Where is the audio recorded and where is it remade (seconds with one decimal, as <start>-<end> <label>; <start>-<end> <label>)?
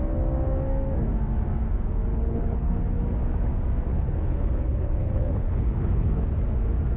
0.0-2.1 recorded; 2.1-2.7 remade; 2.7-3.9 recorded; 3.9-6.2 remade; 6.2-7.0 recorded